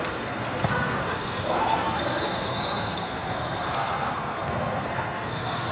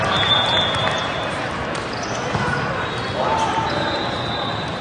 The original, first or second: second